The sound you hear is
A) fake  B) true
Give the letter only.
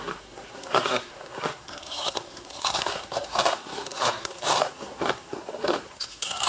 A